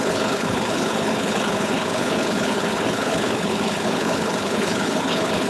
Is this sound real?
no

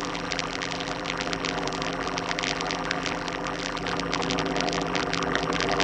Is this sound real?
no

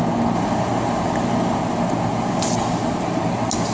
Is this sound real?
yes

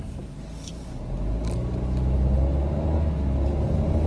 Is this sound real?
yes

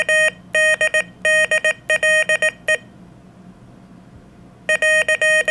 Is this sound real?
yes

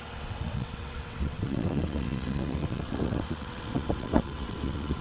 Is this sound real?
no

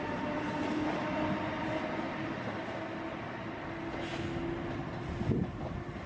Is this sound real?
yes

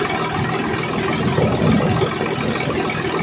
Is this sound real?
yes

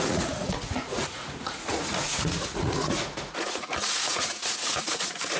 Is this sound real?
no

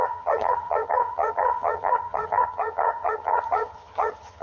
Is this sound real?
no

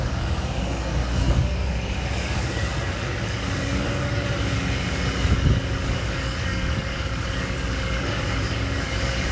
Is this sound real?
no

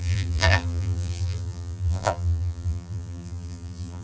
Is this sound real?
no